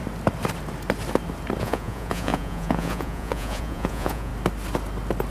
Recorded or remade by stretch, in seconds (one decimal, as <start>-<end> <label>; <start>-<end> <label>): 0.0-1.6 recorded; 1.6-4.3 remade; 4.3-5.3 recorded